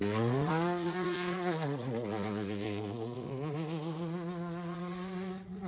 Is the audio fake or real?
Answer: fake